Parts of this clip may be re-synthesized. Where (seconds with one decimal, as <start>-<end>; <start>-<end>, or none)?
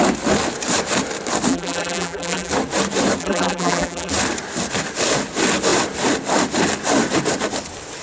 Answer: 1.5-2.5; 3.2-4.1